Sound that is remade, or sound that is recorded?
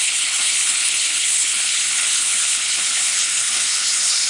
remade